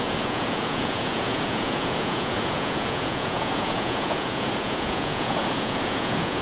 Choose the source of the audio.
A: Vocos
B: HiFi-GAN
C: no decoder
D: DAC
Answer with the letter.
A